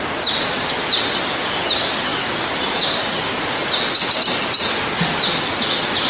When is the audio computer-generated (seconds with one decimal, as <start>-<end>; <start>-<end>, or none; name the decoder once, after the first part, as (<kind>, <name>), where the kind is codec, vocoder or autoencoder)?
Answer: 2.1-3.7 (vocoder, BigVGAN v2)